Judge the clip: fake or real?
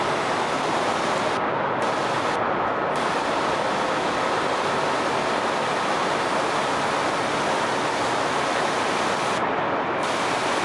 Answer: real